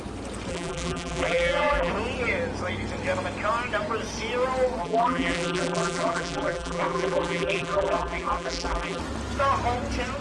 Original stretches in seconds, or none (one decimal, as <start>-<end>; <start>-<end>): 0.0-0.5; 1.9-4.8; 9.0-10.2